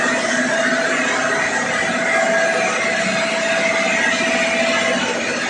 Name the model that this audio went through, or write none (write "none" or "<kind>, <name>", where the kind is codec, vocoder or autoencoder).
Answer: none